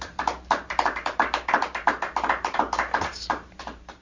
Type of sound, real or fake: fake